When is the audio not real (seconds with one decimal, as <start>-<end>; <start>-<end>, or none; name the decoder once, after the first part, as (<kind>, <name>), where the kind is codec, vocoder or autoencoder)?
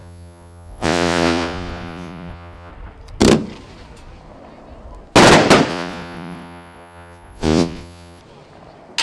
0.0-2.7 (vocoder, Vocos); 5.7-8.2